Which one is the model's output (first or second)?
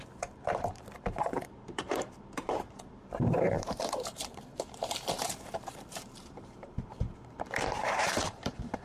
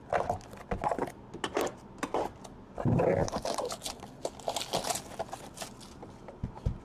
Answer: first